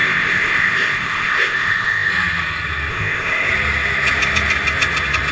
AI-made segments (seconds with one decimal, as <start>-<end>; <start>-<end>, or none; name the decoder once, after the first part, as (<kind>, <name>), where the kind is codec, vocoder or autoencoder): 0.0-2.1 (codec, ZipCodec); 2.9-3.5